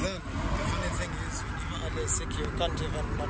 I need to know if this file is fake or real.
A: real